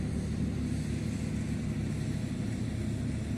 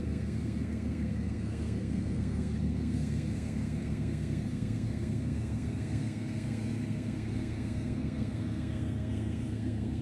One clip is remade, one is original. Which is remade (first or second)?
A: second